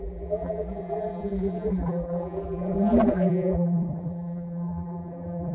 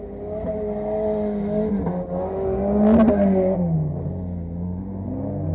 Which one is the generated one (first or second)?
first